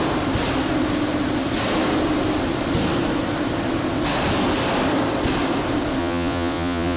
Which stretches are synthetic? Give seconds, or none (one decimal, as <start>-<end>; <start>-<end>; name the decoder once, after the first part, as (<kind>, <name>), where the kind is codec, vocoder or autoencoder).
6.0-7.0 (vocoder, Vocos)

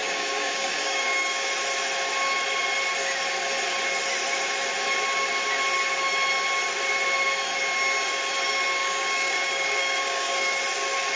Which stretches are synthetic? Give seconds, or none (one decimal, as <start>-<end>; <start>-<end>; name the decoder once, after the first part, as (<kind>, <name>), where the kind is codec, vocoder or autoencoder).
0.0-1.5 (codec, DAC); 8.8-10.6

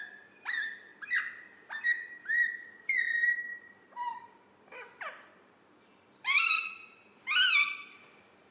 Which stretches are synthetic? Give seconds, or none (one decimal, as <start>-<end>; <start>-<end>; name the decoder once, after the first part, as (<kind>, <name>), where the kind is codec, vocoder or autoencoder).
0.0-0.9 (vocoder, BigVGAN v2); 4.2-5.3; 7.1-8.5

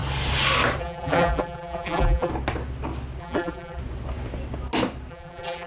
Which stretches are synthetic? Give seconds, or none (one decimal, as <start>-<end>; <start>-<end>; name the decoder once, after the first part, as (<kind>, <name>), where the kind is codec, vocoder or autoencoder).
0.8-2.3 (vocoder, BigVGAN v2); 3.2-3.8; 5.1-5.7

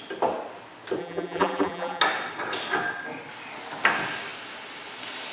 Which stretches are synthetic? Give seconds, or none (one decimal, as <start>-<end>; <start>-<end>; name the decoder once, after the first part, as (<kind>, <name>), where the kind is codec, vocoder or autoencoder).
1.0-2.0 (vocoder, BigVGAN v2)

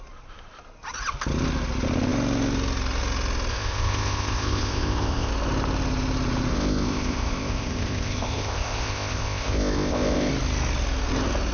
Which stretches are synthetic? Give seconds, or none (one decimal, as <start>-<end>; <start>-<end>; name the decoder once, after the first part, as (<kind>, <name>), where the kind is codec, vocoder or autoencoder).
3.5-5.3 (codec, ZipCodec); 6.5-10.3

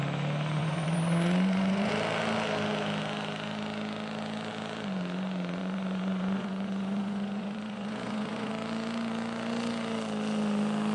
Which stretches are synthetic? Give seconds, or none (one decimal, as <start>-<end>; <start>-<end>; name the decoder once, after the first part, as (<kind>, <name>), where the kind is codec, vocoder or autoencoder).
0.6-1.9 (vocoder, Vocos); 5.6-8.5

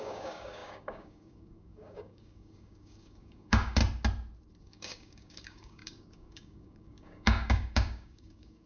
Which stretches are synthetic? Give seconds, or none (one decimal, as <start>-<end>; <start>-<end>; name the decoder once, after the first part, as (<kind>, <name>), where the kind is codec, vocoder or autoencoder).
0.0-3.8 (codec, DAC); 4.6-8.7